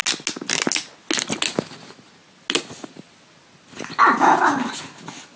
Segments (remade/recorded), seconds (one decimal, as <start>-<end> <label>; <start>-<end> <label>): 0.0-5.4 recorded